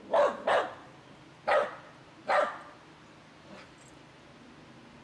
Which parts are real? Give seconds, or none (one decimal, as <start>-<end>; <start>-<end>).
0.0-5.0